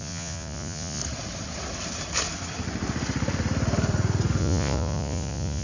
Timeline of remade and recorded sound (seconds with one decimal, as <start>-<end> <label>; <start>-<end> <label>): 0.0-1.0 remade; 1.0-4.4 recorded; 4.4-5.6 remade